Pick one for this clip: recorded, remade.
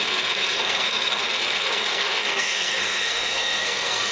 remade